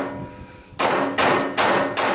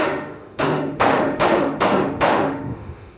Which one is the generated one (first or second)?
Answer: second